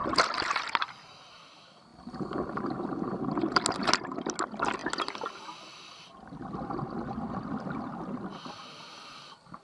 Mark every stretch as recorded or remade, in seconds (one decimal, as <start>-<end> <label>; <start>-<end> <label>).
0.0-9.6 recorded